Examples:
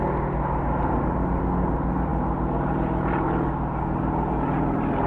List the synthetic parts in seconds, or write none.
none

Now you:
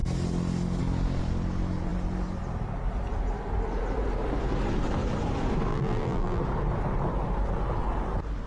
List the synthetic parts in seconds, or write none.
5.7-6.4 (vocoder, BigVGAN v2)

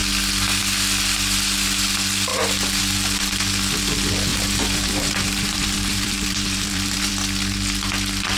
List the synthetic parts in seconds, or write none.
4.3-7.1 (vocoder, BigVGAN v2)

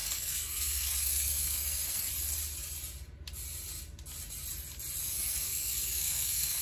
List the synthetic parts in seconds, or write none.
0.0-2.1 (codec, SNAC); 5.0-6.6

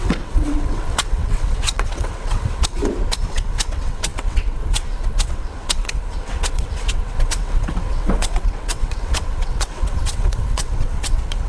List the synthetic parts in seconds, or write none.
0.0-2.8 (vocoder, WaveNeXt); 3.3-11.5

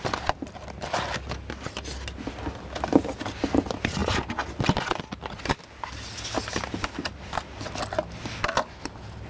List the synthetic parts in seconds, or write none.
none